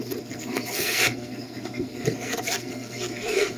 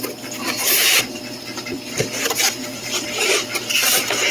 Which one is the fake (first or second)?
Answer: first